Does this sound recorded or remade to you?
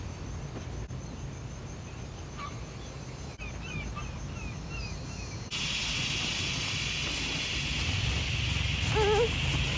recorded